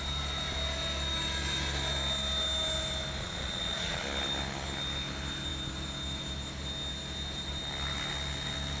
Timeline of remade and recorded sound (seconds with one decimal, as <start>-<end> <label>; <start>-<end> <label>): 0.0-3.2 recorded; 3.2-4.0 remade; 4.0-8.8 recorded